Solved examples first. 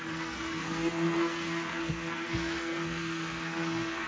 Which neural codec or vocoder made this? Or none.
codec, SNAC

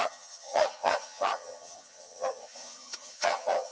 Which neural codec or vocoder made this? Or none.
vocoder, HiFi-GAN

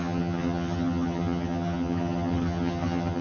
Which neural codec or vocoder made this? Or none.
vocoder, HiFi-GAN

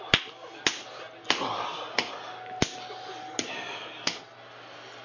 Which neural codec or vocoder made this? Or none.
none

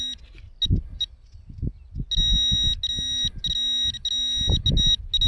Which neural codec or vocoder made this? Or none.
none